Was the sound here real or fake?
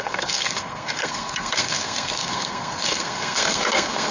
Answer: fake